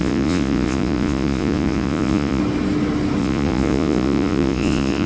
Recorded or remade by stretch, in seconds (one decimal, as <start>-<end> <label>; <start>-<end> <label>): 0.0-2.4 remade; 2.4-3.2 recorded; 3.2-5.1 remade